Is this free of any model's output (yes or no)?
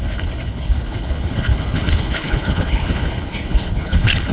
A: no